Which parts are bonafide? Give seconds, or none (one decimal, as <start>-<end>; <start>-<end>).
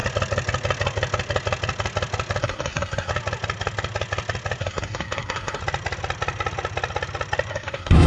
0.0-2.4; 3.1-4.6; 5.6-7.5